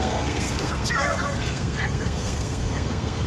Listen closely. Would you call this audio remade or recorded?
remade